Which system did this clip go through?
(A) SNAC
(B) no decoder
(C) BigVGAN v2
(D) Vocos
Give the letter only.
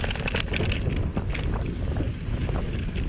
B